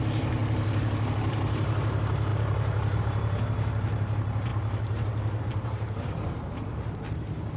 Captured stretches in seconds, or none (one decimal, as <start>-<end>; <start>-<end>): none